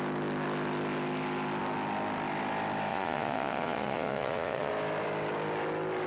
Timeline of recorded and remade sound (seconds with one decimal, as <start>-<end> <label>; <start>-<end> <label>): 0.0-2.9 recorded; 2.9-4.7 remade; 4.7-6.1 recorded